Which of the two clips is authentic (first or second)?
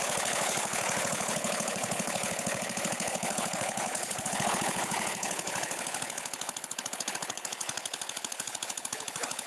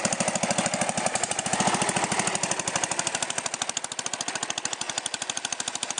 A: second